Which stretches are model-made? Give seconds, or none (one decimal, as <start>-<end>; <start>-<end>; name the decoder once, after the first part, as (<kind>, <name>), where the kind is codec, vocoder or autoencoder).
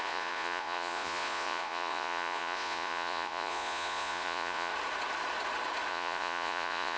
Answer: 0.0-4.7 (vocoder, Vocos); 5.9-7.0